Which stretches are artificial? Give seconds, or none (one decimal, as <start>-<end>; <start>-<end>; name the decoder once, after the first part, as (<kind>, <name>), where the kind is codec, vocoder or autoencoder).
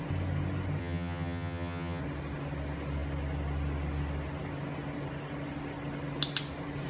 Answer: 0.8-2.0 (vocoder, HiFi-GAN)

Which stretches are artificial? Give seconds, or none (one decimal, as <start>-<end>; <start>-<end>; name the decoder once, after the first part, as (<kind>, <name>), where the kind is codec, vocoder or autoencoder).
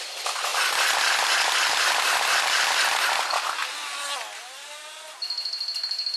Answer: none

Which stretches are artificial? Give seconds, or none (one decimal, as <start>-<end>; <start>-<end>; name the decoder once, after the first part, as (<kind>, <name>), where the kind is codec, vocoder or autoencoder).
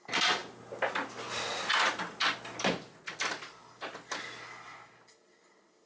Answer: none